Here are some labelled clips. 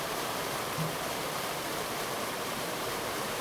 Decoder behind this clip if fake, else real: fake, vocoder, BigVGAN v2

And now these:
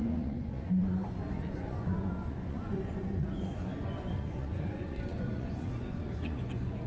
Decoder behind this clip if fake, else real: fake, vocoder, Vocos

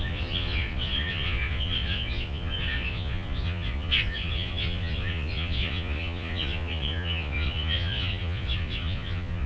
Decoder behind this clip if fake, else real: fake, vocoder, Vocos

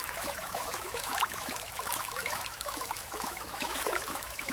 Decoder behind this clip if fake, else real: fake, autoencoder, DAC-VAE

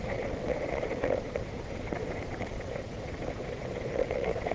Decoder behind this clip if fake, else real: fake, vocoder, Vocos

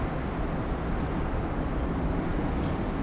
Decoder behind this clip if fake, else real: real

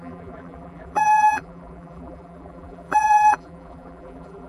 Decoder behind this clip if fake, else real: fake, vocoder, BigVGAN v2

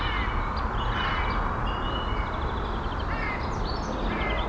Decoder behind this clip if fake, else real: real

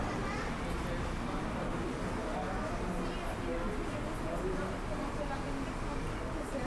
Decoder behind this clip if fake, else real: real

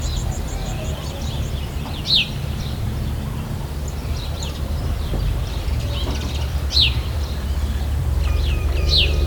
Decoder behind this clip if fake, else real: fake, vocoder, BigVGAN v2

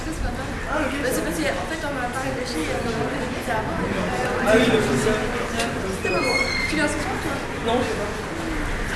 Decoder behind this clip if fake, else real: real